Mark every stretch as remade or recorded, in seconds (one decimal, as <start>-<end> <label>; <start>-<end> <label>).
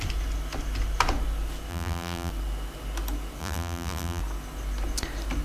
0.0-1.7 recorded; 1.7-2.3 remade; 2.3-3.4 recorded; 3.4-4.2 remade; 4.2-5.4 recorded